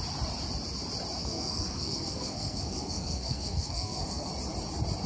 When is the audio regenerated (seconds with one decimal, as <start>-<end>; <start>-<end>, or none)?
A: 1.2-4.3